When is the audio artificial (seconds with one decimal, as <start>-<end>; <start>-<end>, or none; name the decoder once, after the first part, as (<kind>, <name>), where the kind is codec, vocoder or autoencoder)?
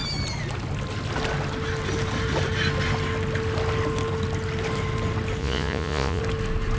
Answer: 5.4-6.2 (vocoder, Vocos)